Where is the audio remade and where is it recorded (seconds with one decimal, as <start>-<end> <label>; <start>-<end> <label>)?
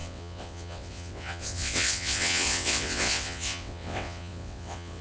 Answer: 0.0-5.0 remade